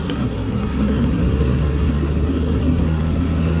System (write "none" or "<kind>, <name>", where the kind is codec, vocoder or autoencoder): codec, SNAC